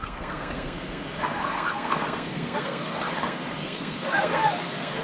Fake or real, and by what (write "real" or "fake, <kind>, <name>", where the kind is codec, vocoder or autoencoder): fake, codec, SNAC